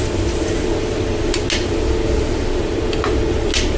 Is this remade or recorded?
recorded